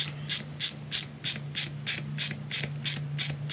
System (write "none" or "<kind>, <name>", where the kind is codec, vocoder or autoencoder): none